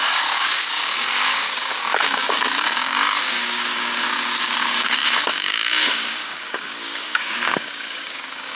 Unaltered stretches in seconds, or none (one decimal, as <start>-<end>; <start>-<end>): none